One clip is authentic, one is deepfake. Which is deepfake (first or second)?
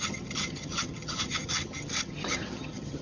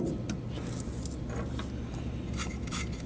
first